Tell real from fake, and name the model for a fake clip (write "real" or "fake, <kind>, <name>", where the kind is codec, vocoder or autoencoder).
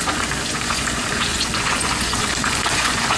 fake, vocoder, Vocos